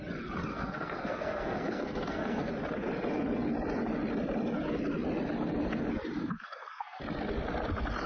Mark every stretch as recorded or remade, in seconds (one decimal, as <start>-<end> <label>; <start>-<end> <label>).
0.0-0.5 recorded; 0.5-2.5 remade; 2.5-6.2 recorded; 6.2-7.0 remade; 7.0-8.1 recorded